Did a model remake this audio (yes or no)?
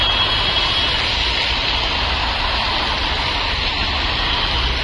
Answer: no